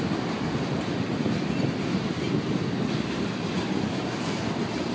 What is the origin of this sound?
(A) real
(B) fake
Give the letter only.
B